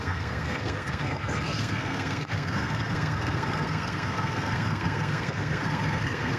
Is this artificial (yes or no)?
yes